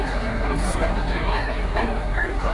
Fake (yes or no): yes